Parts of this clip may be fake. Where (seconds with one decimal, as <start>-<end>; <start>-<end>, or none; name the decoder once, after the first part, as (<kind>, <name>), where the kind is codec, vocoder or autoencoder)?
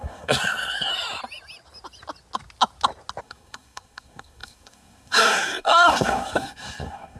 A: 0.0-0.9 (codec, SNAC); 3.2-7.2